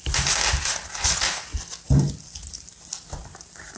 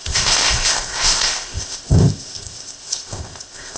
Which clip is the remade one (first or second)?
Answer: second